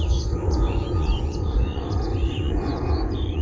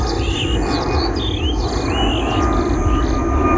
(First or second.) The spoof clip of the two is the first